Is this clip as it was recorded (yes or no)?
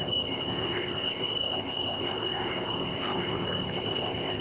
no